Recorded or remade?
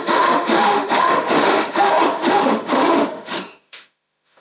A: remade